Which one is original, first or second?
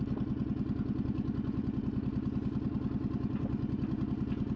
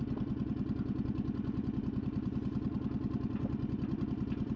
first